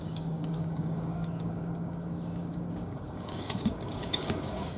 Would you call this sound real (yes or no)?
no